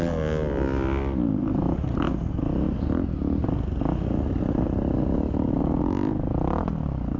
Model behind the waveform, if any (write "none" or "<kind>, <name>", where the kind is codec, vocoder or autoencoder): none